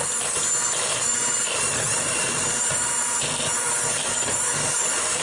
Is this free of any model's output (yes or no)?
no